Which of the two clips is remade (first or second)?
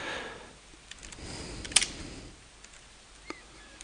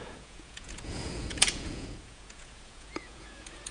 second